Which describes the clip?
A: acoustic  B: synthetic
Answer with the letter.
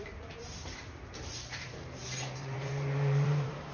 B